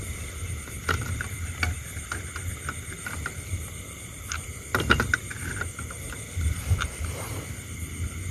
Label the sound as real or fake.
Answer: fake